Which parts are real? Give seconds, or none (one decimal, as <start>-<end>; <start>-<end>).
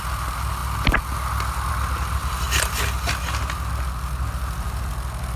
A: 0.0-5.4